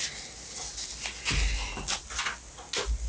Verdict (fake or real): real